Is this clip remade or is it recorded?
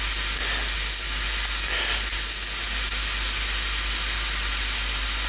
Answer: recorded